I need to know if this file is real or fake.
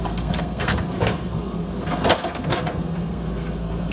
fake